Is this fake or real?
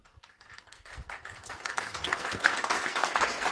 fake